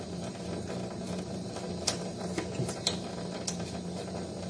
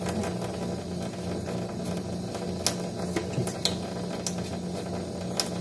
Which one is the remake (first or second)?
first